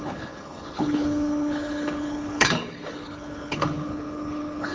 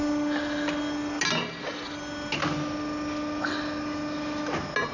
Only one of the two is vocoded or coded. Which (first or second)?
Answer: first